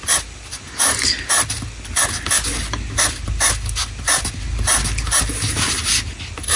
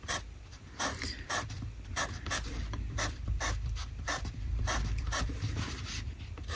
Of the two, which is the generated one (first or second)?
second